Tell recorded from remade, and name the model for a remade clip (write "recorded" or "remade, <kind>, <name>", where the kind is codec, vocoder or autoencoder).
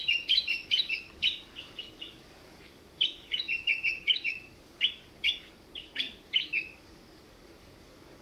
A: remade, codec, DAC